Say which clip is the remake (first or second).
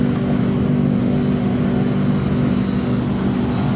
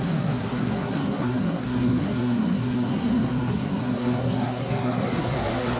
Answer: second